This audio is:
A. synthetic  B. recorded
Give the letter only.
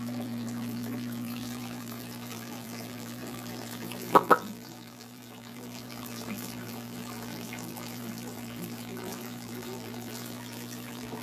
A